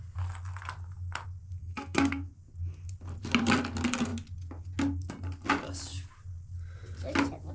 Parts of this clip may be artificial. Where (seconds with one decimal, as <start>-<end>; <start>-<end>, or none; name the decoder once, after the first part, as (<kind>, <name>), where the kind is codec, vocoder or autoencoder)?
1.6-2.3 (codec, SNAC)